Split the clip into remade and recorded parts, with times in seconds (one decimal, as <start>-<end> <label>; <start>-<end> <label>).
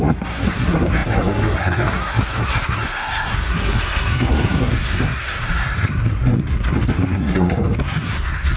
0.0-8.6 remade